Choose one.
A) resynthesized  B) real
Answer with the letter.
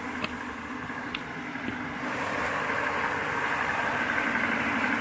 B